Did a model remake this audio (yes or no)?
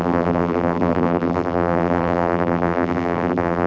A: yes